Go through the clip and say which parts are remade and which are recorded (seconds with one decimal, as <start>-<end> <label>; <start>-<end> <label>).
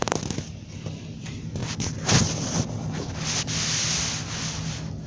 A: 0.0-5.1 recorded